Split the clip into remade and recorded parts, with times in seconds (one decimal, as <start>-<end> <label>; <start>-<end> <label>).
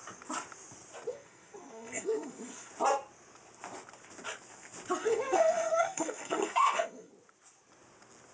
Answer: 0.0-1.1 recorded; 1.1-2.7 remade; 2.7-5.0 recorded; 5.0-7.1 remade; 7.1-8.3 recorded